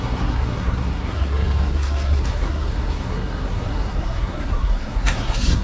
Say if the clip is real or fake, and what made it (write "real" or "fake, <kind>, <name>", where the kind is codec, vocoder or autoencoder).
fake, codec, SNAC